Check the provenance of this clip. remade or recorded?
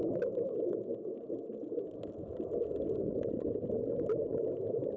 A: recorded